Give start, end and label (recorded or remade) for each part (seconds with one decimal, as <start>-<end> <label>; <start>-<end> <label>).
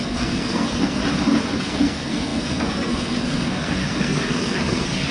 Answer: 0.0-1.0 remade; 1.0-1.6 recorded; 1.6-5.1 remade